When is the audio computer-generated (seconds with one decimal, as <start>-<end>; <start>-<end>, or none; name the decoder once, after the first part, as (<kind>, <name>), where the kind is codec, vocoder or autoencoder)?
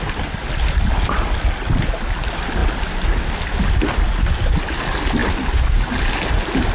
none